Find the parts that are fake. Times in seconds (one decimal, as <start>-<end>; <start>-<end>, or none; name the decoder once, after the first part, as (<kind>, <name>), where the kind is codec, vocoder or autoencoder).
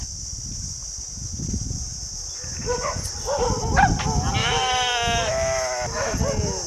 4.4-6.1 (autoencoder, DAC-VAE)